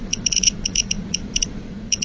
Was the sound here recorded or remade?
remade